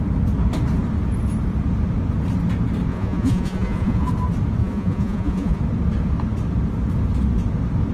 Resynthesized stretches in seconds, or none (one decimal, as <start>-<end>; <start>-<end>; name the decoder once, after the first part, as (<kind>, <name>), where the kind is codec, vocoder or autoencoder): 2.9-4.1 (vocoder, Vocos); 4.6-5.6